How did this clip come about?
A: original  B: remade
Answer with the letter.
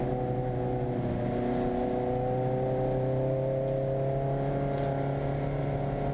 A